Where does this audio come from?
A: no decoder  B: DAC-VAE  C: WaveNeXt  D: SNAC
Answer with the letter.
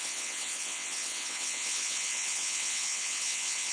C